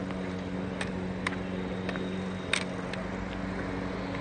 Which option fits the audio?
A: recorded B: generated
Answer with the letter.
A